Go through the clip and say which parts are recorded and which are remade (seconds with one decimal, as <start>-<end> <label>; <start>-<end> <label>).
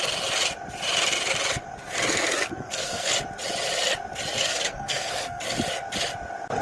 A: 0.0-2.1 recorded; 2.1-3.1 remade; 3.1-4.5 recorded; 4.5-5.4 remade; 5.4-6.6 recorded